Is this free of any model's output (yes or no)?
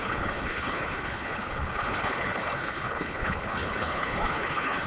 no